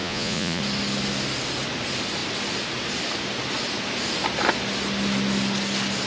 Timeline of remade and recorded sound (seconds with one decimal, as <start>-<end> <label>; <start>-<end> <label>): 0.0-0.6 remade; 0.6-6.1 recorded